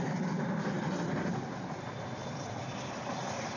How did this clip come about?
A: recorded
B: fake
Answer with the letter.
B